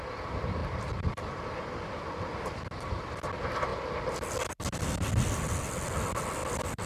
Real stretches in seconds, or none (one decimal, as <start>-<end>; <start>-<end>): 0.0-0.6; 2.2-6.9